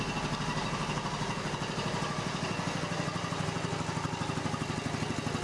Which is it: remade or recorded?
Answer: recorded